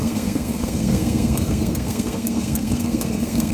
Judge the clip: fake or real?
fake